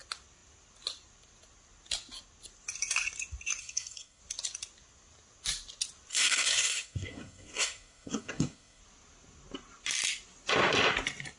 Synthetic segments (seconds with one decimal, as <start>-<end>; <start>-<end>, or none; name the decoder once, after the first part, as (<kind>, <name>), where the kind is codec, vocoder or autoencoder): 3.6-4.2 (codec, SNAC); 6.1-8.8